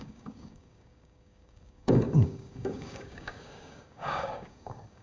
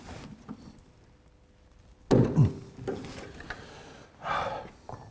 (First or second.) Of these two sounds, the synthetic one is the first